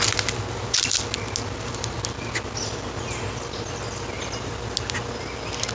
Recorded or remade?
recorded